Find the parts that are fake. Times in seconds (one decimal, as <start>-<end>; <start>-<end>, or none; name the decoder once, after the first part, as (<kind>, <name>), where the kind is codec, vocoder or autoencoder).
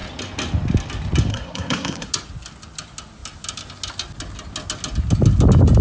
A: 1.3-2.1 (codec, SNAC)